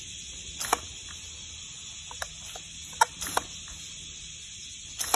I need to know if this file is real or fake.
real